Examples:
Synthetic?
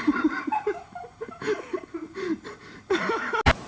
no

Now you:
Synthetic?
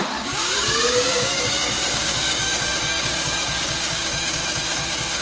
yes